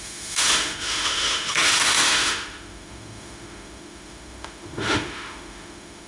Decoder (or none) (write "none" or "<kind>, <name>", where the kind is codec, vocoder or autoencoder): autoencoder, DAC-VAE